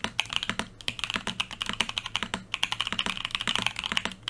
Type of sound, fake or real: real